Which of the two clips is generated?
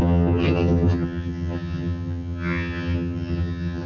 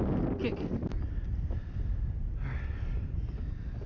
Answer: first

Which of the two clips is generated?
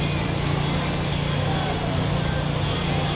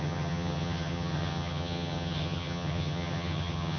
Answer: second